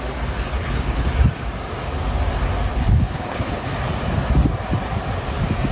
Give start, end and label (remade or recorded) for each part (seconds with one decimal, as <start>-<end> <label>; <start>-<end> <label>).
0.0-0.5 recorded; 0.5-1.1 remade; 1.1-2.7 recorded; 2.7-3.7 remade; 3.7-5.7 recorded